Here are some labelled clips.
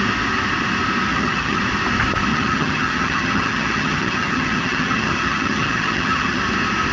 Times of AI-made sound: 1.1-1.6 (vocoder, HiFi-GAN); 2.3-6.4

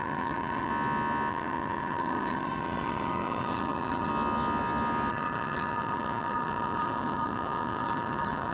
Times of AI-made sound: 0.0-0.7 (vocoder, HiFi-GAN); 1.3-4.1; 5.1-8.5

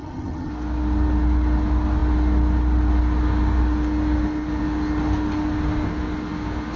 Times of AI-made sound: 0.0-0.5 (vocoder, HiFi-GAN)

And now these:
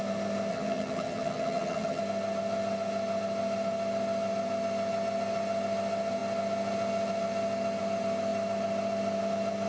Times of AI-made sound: 0.5-2.0 (vocoder, HiFi-GAN)

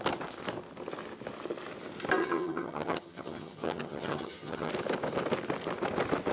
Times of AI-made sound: 2.2-4.7 (vocoder, HiFi-GAN)

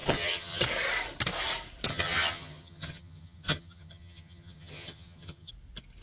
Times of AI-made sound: 0.0-0.6 (vocoder, HiFi-GAN); 1.9-5.5

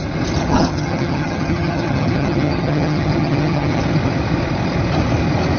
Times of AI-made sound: 0.4-3.8 (vocoder, HiFi-GAN)

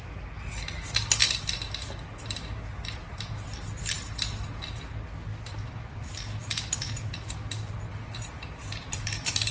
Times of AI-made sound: none